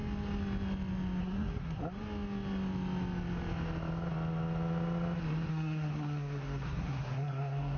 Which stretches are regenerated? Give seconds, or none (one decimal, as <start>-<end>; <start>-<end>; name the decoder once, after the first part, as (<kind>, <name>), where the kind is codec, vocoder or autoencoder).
1.2-1.8 (codec, SNAC); 5.5-7.8